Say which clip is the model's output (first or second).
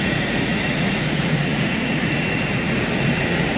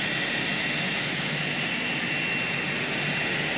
first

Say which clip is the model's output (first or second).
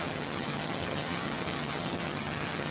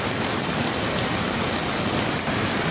first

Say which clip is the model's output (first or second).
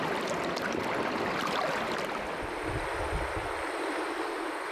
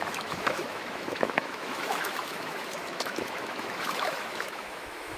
second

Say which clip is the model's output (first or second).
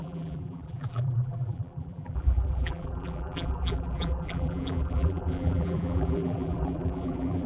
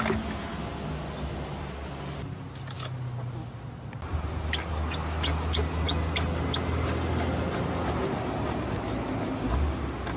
first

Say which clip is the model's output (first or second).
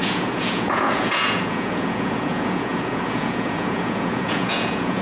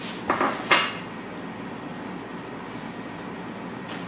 first